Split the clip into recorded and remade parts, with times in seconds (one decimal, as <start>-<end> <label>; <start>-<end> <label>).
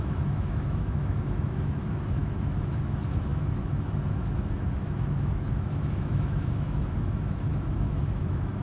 0.0-8.6 remade